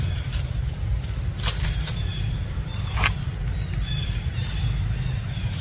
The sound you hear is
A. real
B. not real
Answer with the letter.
A